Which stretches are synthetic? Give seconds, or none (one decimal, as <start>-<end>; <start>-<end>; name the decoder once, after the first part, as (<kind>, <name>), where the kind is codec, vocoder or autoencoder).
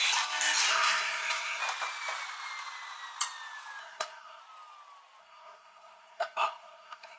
0.7-1.6 (codec, SNAC); 3.8-4.4; 5.2-7.2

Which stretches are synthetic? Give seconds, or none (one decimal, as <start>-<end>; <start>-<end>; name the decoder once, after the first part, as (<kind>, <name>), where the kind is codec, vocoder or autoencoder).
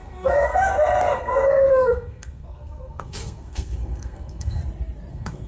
0.0-4.6 (codec, SNAC); 5.1-5.5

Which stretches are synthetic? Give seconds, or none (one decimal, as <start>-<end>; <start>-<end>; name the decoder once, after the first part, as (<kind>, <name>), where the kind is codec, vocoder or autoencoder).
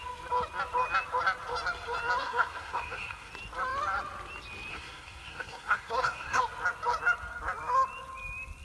2.2-3.3 (codec, SNAC); 4.7-6.4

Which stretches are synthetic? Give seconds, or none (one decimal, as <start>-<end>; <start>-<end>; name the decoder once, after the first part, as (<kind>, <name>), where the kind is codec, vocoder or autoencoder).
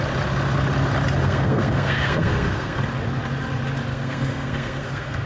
1.2-2.8 (codec, SNAC); 3.9-5.3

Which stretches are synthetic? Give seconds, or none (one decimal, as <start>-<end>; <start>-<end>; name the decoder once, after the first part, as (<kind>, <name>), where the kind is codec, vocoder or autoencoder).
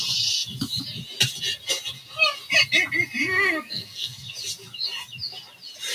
3.2-4.3 (codec, SNAC)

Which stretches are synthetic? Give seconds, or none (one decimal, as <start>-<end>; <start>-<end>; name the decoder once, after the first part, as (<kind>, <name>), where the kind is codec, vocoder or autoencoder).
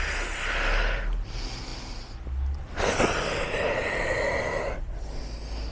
none